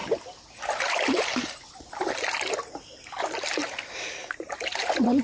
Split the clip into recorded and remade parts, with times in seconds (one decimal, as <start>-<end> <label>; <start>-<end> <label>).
0.0-5.2 recorded